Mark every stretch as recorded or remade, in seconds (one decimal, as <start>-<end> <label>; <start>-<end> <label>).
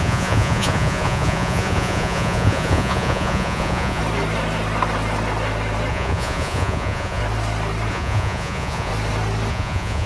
0.0-4.0 remade; 4.0-5.9 recorded; 5.9-7.2 remade; 7.2-7.9 recorded; 7.9-8.9 remade; 8.9-9.5 recorded; 9.5-10.1 remade